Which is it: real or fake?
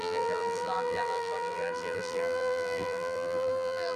fake